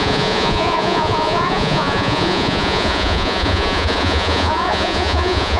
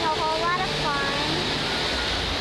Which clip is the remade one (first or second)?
first